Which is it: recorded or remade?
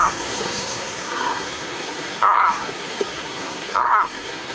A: remade